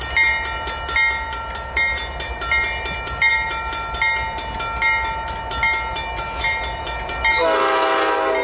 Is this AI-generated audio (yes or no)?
no